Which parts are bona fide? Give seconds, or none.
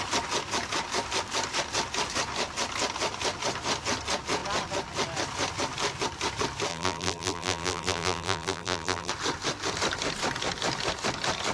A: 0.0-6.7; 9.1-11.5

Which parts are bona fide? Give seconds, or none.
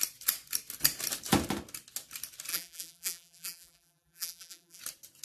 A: 0.0-2.5; 4.8-5.2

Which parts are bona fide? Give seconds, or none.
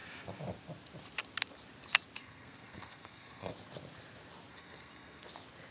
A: 0.0-2.2; 3.5-4.5; 5.3-5.7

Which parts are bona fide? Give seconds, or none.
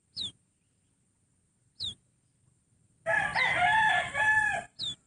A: 0.0-5.1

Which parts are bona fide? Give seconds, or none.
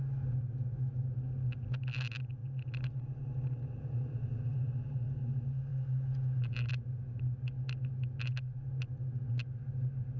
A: 0.0-10.2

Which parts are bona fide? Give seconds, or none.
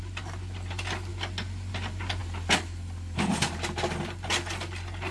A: 1.1-1.7; 2.2-5.1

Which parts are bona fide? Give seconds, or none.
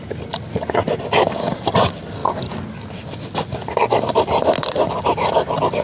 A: 0.0-5.8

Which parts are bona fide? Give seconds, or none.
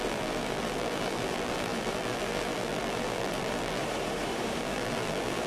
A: 3.8-4.6